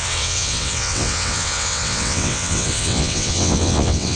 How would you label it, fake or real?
fake